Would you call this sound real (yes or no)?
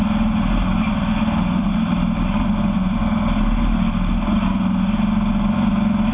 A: yes